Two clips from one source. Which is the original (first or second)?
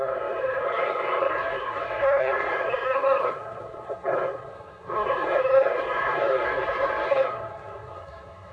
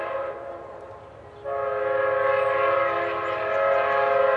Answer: second